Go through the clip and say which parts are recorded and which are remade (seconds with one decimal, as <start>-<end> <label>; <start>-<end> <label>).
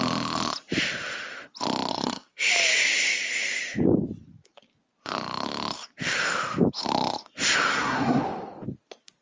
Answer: 0.0-1.9 recorded; 1.9-2.5 remade; 2.5-7.7 recorded; 7.7-8.2 remade; 8.2-9.2 recorded